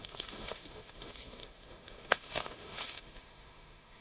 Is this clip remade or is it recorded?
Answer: remade